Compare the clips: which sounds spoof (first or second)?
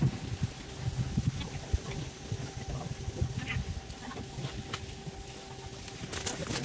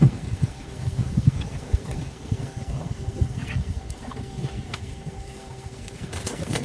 second